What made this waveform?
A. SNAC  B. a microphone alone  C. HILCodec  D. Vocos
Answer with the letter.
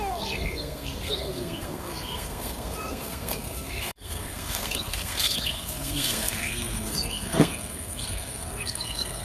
A